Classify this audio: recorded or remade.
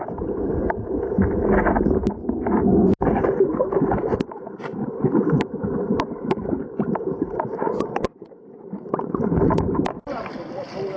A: recorded